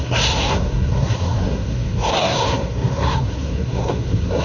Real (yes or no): no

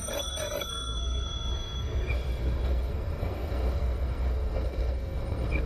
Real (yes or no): no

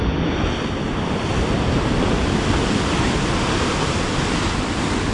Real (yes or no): yes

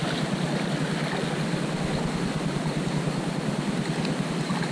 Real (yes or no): yes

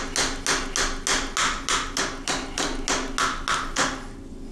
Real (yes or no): yes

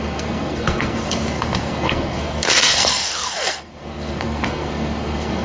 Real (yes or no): no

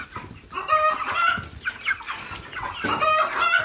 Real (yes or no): yes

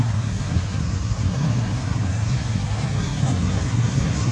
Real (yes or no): no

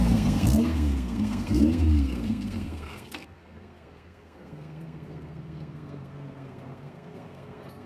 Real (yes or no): no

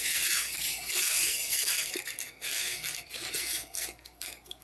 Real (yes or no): no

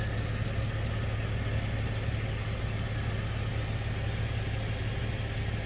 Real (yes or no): yes